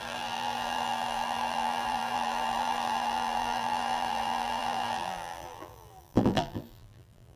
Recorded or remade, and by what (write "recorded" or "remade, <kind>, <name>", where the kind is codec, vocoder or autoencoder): remade, vocoder, BigVGAN v2